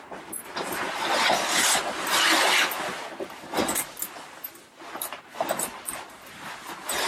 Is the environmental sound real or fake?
real